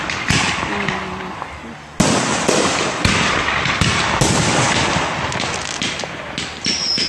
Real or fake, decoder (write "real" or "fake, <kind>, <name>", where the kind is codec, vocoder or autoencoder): real